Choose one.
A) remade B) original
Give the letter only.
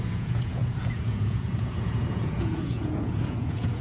A